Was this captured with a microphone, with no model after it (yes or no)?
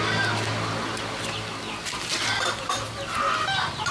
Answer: yes